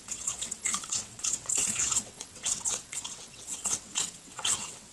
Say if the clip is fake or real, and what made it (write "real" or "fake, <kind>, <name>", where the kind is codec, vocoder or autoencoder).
fake, vocoder, WaveNeXt